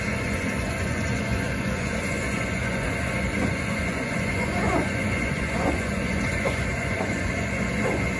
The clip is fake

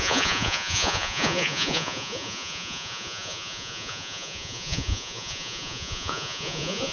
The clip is fake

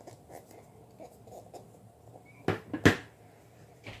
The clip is real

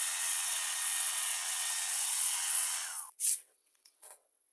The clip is fake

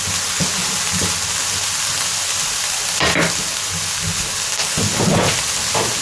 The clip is real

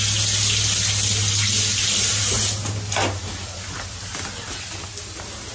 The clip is real